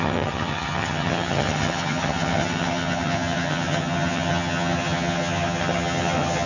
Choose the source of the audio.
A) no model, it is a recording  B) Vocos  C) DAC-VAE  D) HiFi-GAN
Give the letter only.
D